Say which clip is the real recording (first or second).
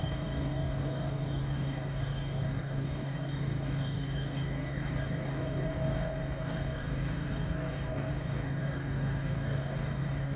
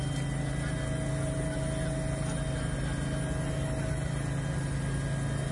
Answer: second